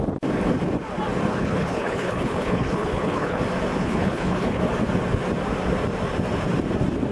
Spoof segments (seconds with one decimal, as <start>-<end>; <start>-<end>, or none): 1.3-3.4; 3.8-4.6